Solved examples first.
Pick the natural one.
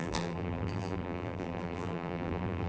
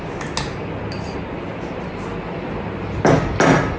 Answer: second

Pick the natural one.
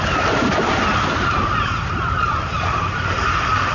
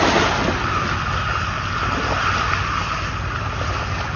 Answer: second